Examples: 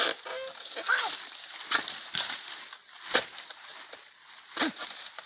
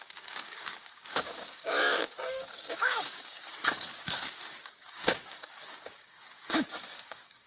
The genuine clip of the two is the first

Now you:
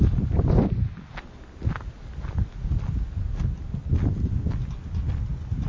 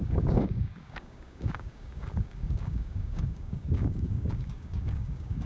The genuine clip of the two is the first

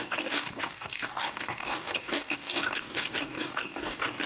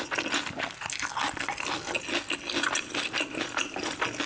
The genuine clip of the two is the second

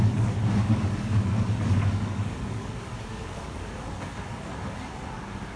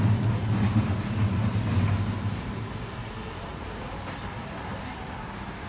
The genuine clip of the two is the second